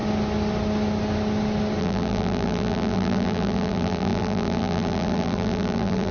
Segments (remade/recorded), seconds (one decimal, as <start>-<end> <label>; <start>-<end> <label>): 0.0-1.8 recorded; 1.8-6.1 remade